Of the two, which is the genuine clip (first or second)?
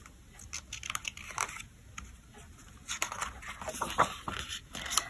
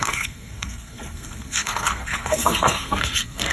first